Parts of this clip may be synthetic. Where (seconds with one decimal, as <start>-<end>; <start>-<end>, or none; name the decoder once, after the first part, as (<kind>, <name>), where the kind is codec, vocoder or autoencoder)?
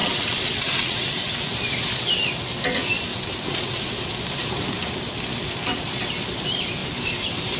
0.0-1.4 (vocoder, WaveNeXt); 3.1-3.9